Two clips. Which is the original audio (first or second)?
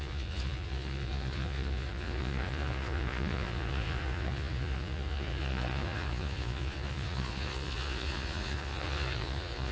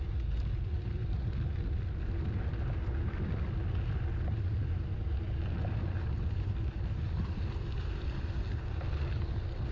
second